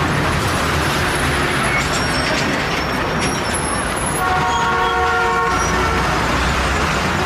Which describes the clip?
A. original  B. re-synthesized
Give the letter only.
A